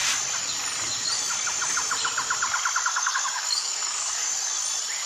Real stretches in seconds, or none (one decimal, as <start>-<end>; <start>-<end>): 0.0-2.9; 4.5-5.1